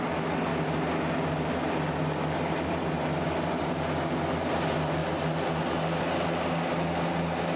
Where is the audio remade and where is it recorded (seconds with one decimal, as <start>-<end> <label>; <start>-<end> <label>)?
0.0-7.6 recorded